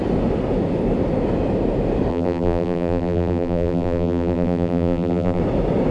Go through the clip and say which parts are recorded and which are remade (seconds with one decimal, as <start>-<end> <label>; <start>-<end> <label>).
0.0-2.1 recorded; 2.1-5.4 remade; 5.4-5.9 recorded